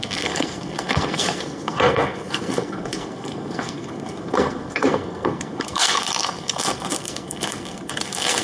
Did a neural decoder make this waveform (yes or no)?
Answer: yes